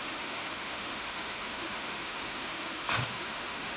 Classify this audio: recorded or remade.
remade